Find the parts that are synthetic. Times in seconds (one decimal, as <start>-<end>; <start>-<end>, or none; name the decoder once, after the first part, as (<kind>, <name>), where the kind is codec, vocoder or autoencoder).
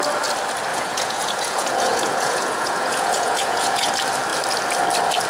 0.7-3.9 (vocoder, Vocos)